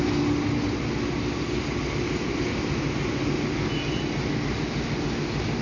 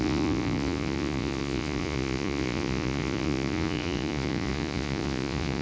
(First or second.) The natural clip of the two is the first